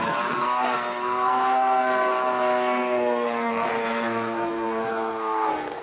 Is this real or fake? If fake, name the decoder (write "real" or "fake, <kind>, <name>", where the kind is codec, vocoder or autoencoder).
fake, codec, SNAC